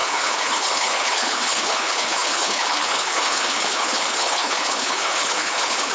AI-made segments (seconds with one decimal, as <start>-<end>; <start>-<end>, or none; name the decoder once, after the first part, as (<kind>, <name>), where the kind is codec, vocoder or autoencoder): 0.0-5.9 (codec, HILCodec)